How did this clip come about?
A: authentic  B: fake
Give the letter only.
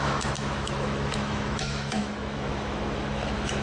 B